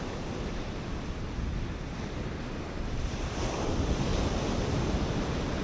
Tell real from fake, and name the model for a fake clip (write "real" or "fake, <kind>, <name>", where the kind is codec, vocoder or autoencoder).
real